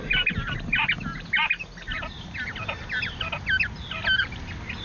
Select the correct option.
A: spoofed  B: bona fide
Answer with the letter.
B